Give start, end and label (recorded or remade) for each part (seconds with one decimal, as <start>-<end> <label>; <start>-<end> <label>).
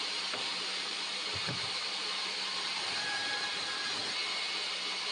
0.0-0.5 recorded; 0.5-3.6 remade; 3.6-5.1 recorded